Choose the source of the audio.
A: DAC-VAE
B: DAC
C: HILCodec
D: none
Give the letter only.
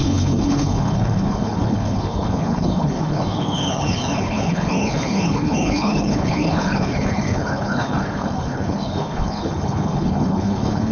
C